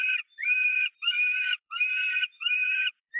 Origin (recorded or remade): remade